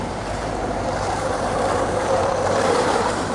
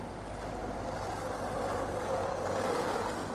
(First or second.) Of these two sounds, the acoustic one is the second